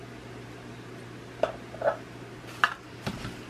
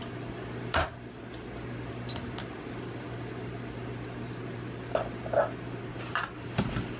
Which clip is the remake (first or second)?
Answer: second